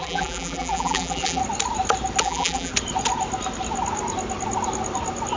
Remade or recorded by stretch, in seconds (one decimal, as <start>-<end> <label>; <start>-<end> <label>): 0.0-1.4 remade; 1.4-2.2 recorded; 2.2-2.7 remade; 2.7-5.4 recorded